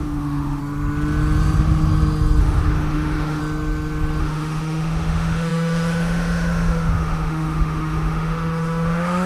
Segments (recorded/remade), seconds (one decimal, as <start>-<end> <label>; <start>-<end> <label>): 0.0-0.6 remade; 0.6-2.4 recorded; 2.4-3.4 remade; 3.4-4.2 recorded; 4.2-9.3 remade